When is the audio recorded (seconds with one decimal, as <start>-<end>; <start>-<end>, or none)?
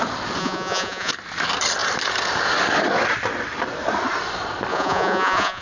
0.0-0.4; 1.1-4.7